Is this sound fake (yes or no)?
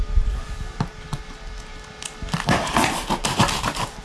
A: no